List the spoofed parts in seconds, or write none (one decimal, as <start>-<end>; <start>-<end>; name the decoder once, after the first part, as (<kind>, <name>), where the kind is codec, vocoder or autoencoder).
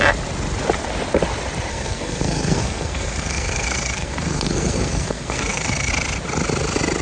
1.7-5.9 (codec, SNAC)